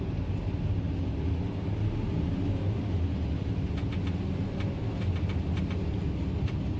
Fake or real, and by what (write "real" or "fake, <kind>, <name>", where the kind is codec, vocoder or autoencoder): real